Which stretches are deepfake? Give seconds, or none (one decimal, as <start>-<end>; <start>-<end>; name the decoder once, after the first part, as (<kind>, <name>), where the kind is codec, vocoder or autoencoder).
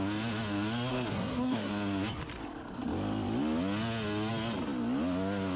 0.9-1.7 (codec, SNAC)